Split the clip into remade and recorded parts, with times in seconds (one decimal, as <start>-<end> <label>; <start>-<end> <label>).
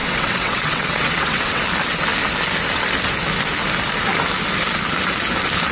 0.0-1.6 remade; 1.6-5.7 recorded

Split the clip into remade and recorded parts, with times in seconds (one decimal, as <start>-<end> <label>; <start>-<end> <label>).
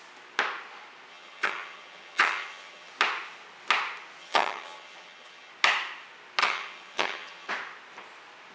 0.0-1.1 recorded; 1.1-2.9 remade; 2.9-4.2 recorded; 4.2-5.5 remade; 5.5-6.4 recorded; 6.4-7.5 remade; 7.5-8.5 recorded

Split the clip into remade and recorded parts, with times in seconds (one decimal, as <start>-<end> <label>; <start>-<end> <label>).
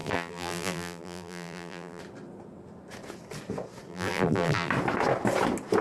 0.0-2.0 remade; 2.0-3.9 recorded; 3.9-4.7 remade; 4.7-5.8 recorded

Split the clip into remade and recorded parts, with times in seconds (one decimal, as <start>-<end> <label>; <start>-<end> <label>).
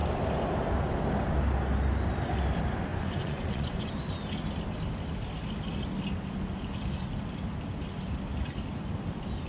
0.0-2.9 recorded; 2.9-3.9 remade; 3.9-9.5 recorded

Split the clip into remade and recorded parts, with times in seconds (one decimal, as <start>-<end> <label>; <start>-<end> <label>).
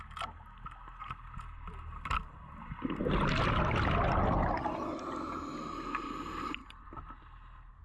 0.0-7.8 recorded